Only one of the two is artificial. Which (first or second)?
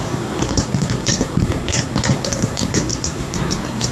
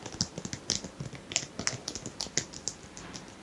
first